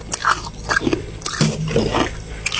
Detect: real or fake real